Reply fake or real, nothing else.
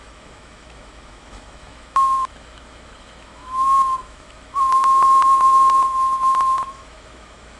fake